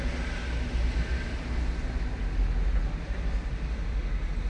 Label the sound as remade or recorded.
recorded